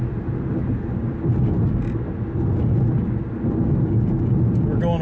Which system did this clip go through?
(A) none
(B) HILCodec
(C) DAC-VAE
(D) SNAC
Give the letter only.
A